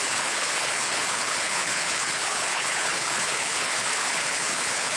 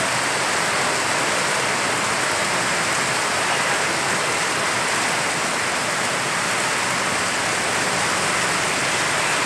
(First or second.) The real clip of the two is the second